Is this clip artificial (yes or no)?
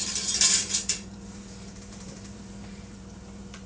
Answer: yes